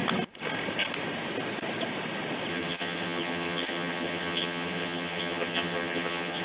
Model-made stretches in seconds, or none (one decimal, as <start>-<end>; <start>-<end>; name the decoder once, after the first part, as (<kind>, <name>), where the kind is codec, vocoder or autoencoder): 2.5-6.4 (vocoder, HiFi-GAN)